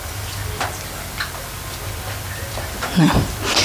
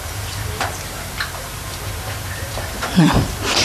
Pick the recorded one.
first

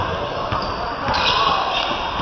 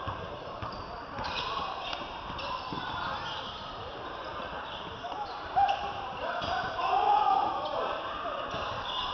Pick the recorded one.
first